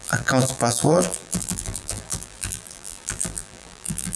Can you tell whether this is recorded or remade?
remade